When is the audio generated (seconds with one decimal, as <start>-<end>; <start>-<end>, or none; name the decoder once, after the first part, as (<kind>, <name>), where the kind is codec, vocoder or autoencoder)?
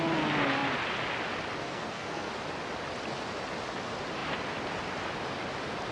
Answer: 1.6-2.3 (codec, SNAC)